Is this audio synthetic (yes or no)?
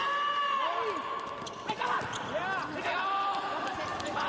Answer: no